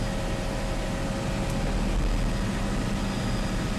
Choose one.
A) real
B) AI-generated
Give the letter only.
A